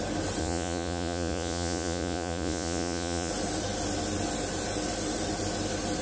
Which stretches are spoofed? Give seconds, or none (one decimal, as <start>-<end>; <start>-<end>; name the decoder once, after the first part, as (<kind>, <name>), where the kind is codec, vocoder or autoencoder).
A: 0.4-3.3 (vocoder, Vocos)